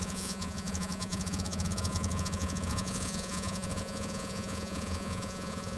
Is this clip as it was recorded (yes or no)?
no